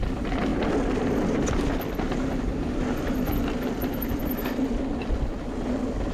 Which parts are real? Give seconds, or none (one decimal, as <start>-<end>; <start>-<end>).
0.0-6.1